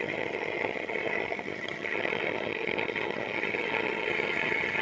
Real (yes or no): no